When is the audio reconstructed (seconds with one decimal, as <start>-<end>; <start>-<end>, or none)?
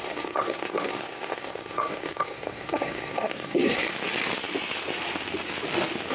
0.0-3.9